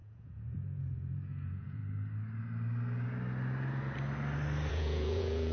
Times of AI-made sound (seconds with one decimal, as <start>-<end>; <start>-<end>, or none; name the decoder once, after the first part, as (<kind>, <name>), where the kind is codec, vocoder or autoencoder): 0.0-1.8 (vocoder, Vocos); 4.7-5.5